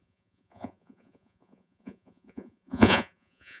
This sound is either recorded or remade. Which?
remade